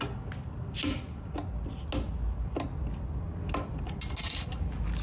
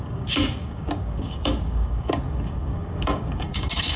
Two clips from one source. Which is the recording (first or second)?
first